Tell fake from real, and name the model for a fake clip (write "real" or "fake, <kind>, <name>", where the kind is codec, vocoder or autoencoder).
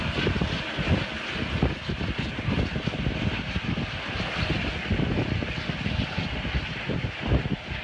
real